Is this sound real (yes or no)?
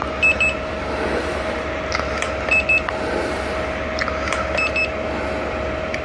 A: yes